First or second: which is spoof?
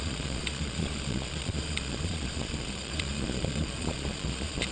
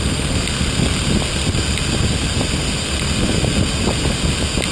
first